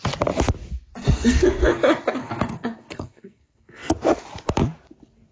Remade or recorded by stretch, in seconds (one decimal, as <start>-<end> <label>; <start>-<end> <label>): 0.0-1.0 recorded; 1.0-1.8 remade; 1.8-2.2 recorded; 2.2-3.9 remade; 3.9-5.3 recorded